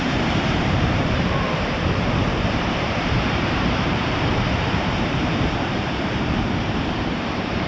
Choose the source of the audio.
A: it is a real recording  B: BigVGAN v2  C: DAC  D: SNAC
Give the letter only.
B